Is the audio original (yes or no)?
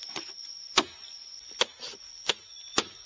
yes